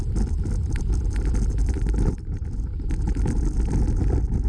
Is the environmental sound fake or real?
fake